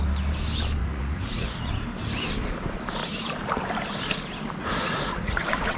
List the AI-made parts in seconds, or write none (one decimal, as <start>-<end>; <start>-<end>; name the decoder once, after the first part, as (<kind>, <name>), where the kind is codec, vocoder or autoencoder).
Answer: 0.8-1.7 (vocoder, Vocos); 4.6-5.8